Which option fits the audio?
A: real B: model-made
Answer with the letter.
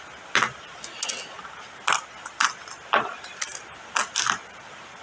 A